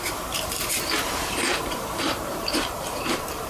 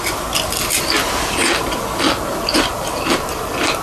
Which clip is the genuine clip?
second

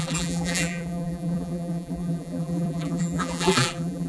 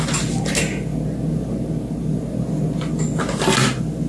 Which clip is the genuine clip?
second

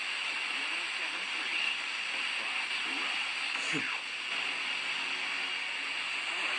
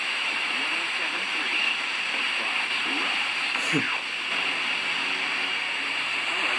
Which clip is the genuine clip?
first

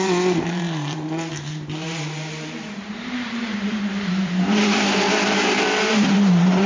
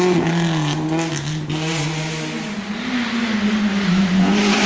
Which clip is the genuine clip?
second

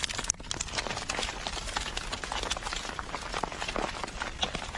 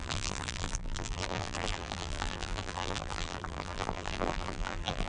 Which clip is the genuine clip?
first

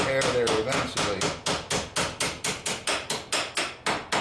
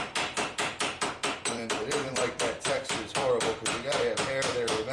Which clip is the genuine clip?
first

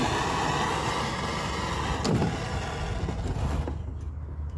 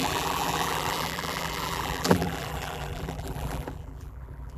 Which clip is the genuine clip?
first